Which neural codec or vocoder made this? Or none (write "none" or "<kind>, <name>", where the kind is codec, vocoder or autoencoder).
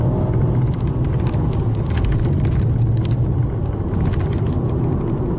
none